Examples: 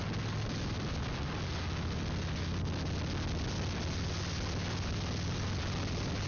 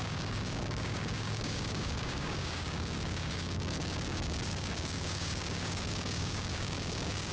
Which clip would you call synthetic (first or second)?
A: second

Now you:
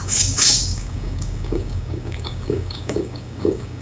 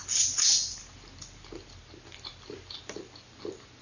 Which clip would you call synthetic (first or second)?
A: first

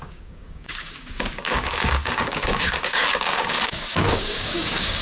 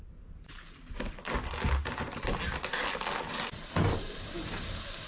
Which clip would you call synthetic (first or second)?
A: first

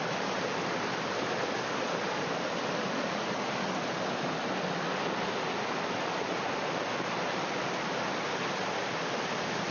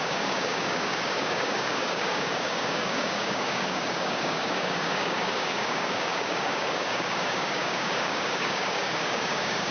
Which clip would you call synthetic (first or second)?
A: second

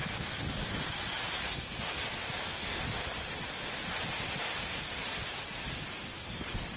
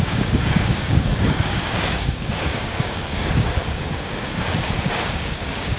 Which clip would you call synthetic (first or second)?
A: second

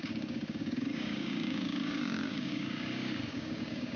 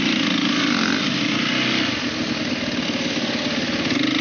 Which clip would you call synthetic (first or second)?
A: first